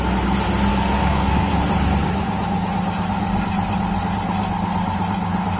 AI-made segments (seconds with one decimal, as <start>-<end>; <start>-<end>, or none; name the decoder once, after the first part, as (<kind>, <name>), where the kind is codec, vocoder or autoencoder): 0.7-1.5 (codec, DAC)